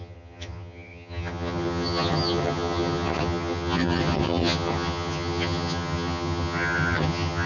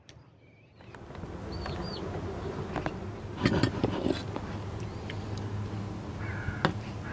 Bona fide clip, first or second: second